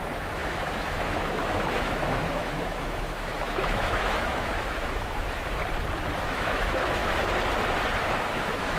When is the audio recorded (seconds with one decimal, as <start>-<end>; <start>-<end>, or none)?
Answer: 5.6-6.3; 7.0-8.1